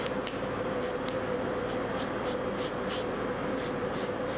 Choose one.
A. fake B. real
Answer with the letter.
B